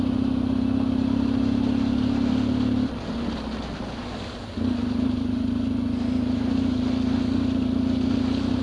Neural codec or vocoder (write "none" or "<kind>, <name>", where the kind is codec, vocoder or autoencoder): none